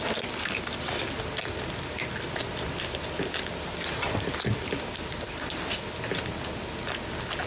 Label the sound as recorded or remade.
recorded